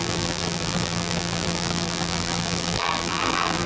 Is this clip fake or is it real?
fake